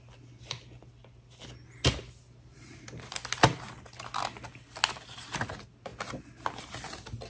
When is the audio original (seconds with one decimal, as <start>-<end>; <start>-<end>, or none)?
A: 0.0-7.3